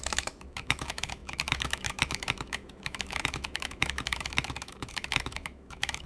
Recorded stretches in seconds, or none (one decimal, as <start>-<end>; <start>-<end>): none